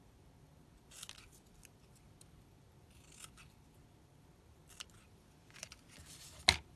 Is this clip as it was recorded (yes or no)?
yes